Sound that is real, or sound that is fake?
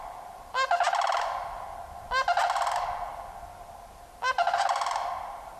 real